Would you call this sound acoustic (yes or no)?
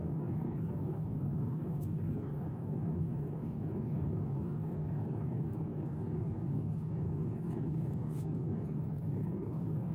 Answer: no